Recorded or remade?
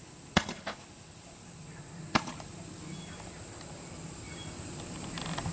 recorded